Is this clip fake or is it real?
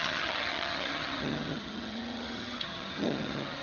fake